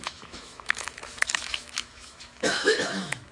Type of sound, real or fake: fake